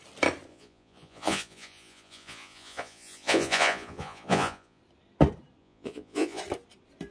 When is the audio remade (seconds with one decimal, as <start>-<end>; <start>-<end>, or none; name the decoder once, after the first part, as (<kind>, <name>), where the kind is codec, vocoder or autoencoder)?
0.5-4.8 (vocoder, Vocos); 5.6-6.4